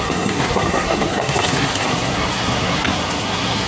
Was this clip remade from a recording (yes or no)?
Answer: yes